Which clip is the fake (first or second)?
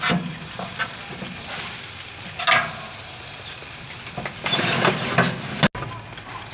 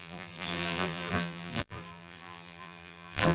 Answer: second